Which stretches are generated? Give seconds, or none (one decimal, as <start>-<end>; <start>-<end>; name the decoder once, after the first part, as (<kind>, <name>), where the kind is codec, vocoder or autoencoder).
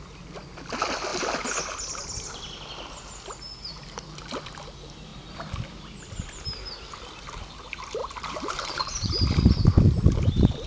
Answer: 8.0-9.1 (vocoder, BigVGAN v2)